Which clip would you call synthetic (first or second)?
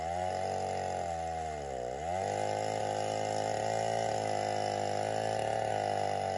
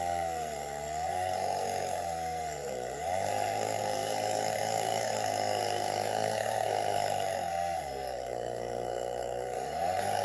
second